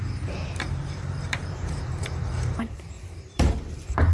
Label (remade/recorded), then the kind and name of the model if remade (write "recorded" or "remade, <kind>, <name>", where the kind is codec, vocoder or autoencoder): remade, vocoder, BigVGAN v2